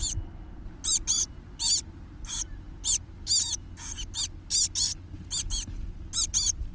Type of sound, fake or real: real